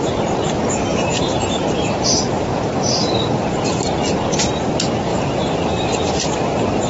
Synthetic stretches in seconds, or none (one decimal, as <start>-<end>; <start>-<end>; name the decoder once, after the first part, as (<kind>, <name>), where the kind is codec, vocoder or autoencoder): 0.9-3.2 (vocoder, BigVGAN v2); 5.1-6.9